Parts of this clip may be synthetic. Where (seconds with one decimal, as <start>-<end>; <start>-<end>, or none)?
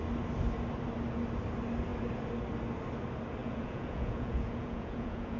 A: 3.4-5.4